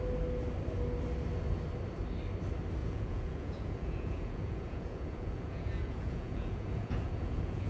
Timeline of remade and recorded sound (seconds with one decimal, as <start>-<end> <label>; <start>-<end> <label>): 0.0-2.8 recorded; 2.8-7.7 remade